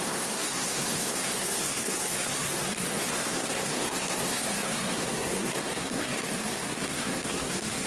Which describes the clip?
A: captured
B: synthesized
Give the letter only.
B